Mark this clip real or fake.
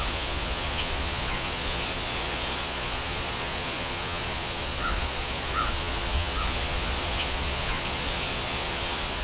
fake